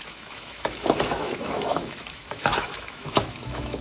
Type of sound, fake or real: fake